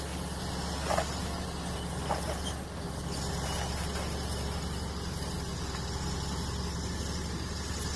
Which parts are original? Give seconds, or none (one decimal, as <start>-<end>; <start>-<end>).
0.0-8.0

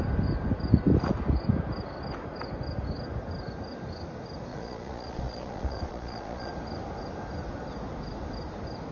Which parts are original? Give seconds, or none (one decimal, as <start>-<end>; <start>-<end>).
0.0-4.5; 6.5-8.9